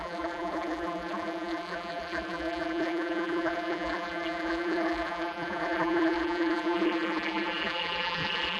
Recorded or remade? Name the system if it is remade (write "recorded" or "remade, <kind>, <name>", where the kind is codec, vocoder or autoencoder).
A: remade, vocoder, BigVGAN v2